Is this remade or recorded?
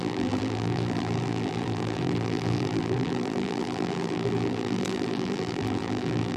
remade